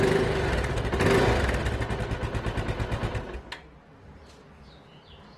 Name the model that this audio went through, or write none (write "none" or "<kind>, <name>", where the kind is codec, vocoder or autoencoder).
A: none